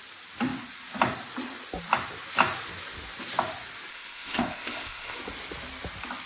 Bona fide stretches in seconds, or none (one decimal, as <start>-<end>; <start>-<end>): 0.0-3.9; 5.2-6.3